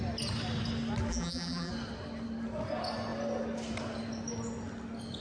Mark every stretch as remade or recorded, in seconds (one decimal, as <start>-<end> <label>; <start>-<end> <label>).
0.0-1.1 recorded; 1.1-1.7 remade; 1.7-5.2 recorded